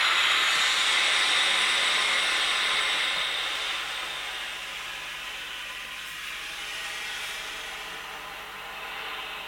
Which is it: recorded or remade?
recorded